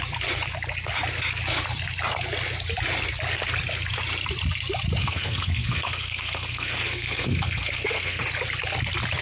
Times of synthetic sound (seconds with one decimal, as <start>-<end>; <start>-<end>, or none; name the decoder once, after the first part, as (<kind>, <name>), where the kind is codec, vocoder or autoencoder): 5.0-8.2 (codec, SNAC)

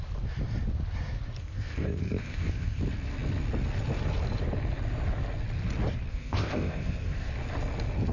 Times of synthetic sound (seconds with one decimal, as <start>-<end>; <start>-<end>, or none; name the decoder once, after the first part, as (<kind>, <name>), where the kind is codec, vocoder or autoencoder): 1.4-2.8 (codec, ZipCodec); 6.1-7.3

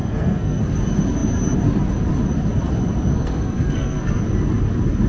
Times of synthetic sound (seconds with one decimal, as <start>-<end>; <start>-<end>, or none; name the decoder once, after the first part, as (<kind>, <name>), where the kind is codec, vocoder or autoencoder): 0.0-0.6 (codec, SNAC); 3.1-4.2

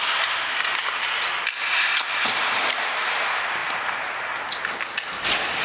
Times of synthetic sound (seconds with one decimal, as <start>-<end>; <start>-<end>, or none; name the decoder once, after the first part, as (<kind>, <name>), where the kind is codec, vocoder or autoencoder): none

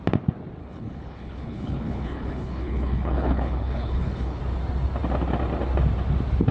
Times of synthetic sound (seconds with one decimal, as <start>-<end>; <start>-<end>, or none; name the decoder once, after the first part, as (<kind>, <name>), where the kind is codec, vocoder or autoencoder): 0.6-4.4 (codec, HILCodec)

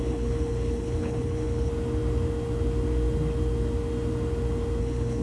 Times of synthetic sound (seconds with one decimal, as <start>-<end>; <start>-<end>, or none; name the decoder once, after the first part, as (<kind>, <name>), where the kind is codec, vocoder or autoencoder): 0.0-1.7 (codec, HILCodec); 4.8-5.2